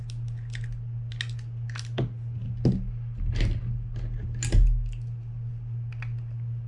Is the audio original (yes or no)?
yes